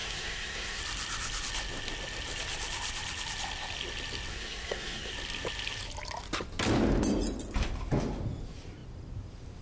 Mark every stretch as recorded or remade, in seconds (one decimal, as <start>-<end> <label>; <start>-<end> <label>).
0.0-0.8 remade; 0.8-4.3 recorded; 4.3-5.1 remade; 5.1-9.6 recorded